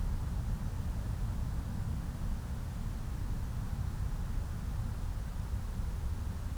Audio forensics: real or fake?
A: real